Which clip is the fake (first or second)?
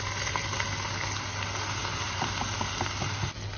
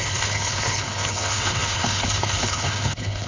second